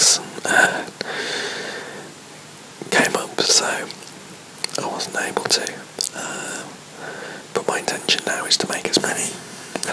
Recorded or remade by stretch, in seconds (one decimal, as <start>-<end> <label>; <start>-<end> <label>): 0.0-9.0 recorded; 9.0-9.9 remade